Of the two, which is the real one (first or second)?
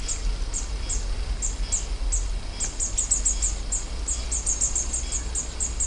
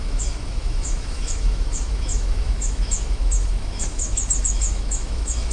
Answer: first